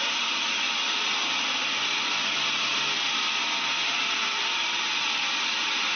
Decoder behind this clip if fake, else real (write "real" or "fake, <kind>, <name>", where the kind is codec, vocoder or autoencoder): real